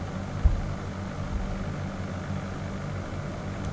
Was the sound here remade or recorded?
recorded